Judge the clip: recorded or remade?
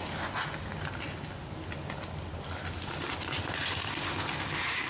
recorded